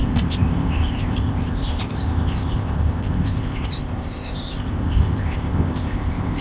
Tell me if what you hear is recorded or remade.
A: remade